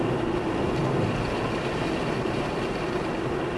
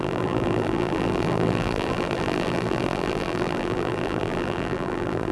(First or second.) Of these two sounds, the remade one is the second